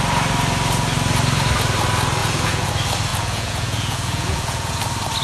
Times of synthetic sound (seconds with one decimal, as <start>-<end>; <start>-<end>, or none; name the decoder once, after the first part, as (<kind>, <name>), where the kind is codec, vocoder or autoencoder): 2.2-2.7 (vocoder, Vocos); 3.1-4.8